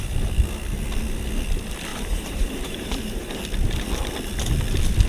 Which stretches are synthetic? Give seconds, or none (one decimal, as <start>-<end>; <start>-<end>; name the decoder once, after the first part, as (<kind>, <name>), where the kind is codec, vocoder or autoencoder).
1.9-3.4 (vocoder, BigVGAN v2)